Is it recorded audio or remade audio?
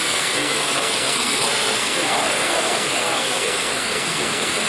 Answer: remade